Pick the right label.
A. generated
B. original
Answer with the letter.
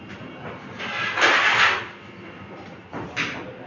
B